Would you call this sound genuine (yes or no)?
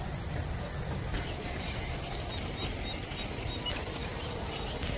yes